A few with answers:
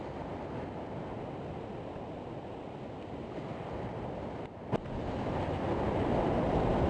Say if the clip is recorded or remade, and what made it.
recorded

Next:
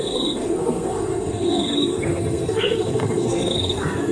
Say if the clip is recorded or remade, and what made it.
remade, codec, SNAC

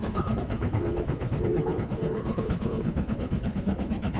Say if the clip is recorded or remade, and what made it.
remade, codec, HILCodec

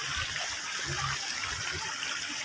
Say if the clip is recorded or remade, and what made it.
recorded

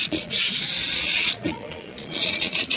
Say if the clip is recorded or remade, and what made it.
remade, vocoder, Vocos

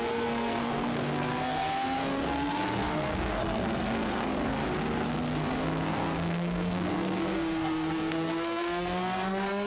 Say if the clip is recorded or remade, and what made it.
remade, codec, SNAC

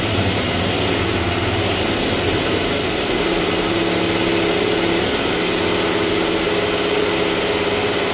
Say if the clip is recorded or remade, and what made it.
recorded